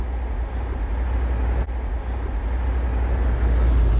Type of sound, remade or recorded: recorded